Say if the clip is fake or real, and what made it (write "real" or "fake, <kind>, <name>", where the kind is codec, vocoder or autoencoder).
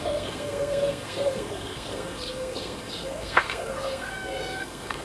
fake, codec, SNAC